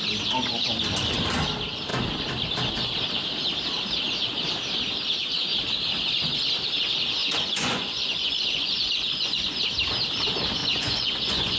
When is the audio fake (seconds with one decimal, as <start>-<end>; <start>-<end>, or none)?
7.2-9.6; 10.6-11.6